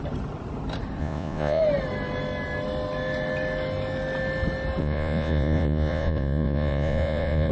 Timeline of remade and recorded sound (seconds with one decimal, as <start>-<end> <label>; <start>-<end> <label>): 0.0-1.0 recorded; 1.0-1.6 remade; 1.6-4.8 recorded; 4.8-7.5 remade